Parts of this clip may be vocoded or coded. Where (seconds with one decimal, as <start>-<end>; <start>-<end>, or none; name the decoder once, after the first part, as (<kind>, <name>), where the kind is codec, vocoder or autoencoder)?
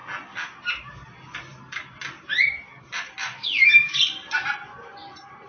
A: 3.2-3.9 (autoencoder, DAC-VAE)